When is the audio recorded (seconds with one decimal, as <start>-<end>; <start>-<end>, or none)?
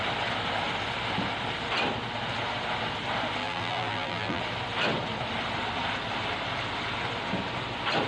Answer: 0.0-3.4; 4.4-8.1